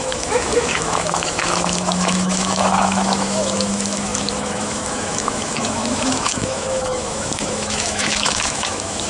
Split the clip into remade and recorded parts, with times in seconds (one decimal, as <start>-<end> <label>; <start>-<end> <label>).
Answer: 0.0-9.1 remade